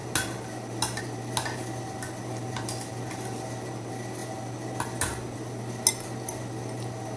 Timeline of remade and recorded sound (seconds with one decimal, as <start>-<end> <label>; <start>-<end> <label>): 0.0-7.2 recorded